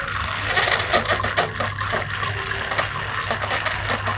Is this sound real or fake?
real